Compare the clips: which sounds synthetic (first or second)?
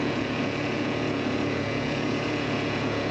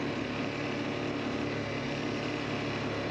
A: first